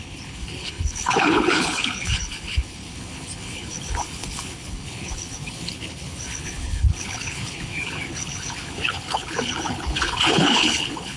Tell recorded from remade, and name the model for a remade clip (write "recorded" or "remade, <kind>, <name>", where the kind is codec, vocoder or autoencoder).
remade, codec, HILCodec